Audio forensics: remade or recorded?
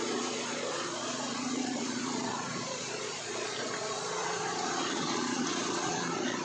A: remade